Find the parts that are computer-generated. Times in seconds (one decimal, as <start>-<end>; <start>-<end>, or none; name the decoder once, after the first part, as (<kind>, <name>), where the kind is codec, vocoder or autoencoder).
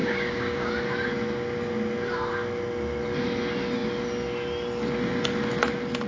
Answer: 0.0-0.7 (codec, DAC)